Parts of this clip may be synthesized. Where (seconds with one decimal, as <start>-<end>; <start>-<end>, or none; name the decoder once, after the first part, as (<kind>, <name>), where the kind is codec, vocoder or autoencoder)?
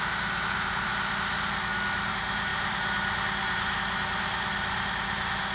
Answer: 0.0-0.9 (vocoder, BigVGAN v2); 2.1-5.5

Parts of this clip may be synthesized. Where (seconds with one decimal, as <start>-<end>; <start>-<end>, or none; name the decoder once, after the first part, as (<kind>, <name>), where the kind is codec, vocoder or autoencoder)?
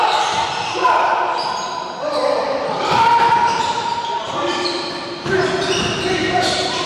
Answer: 0.0-1.1 (vocoder, BigVGAN v2); 3.5-6.9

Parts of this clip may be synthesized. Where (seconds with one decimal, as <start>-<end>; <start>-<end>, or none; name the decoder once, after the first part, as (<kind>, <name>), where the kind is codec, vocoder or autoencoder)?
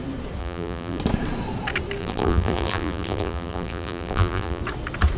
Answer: 0.4-1.0 (vocoder, BigVGAN v2); 2.0-4.6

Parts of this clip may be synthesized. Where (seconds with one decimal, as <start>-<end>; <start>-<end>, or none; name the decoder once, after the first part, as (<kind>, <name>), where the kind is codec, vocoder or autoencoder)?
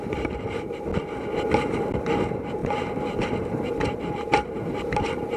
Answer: 0.0-0.9 (vocoder, BigVGAN v2); 1.6-5.4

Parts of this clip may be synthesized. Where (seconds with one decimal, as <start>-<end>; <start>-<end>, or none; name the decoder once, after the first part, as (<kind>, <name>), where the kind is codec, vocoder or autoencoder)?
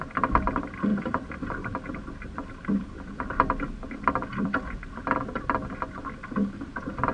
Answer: 0.9-5.2 (vocoder, BigVGAN v2)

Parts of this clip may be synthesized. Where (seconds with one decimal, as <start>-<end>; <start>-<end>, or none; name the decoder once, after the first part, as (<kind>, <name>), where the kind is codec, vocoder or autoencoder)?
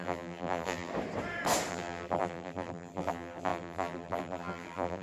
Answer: 0.0-0.9 (vocoder, BigVGAN v2); 1.7-5.0